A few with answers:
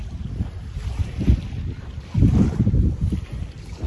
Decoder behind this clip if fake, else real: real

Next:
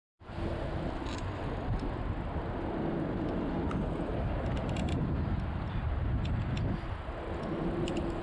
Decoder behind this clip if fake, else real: real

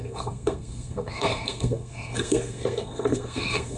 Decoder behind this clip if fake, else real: fake, codec, SNAC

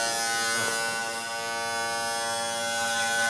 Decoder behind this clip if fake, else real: real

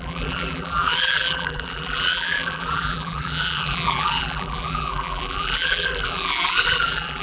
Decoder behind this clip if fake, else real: fake, vocoder, BigVGAN v2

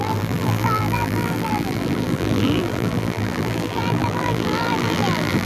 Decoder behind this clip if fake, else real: fake, vocoder, BigVGAN v2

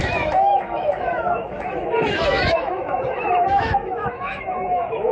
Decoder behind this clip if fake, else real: fake, autoencoder, DAC-VAE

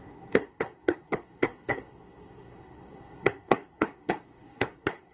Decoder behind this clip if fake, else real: fake, codec, SNAC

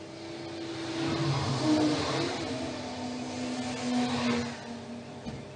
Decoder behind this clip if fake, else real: real